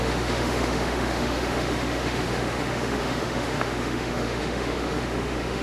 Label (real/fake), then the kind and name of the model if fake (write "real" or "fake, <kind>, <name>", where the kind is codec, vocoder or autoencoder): fake, autoencoder, DAC-VAE